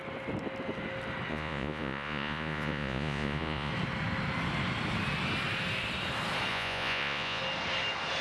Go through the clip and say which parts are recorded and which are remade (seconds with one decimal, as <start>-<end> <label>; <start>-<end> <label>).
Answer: 0.0-1.3 recorded; 1.3-3.7 remade; 3.7-6.5 recorded; 6.5-7.4 remade; 7.4-8.2 recorded